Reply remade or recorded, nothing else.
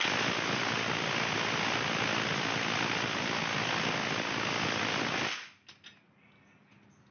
recorded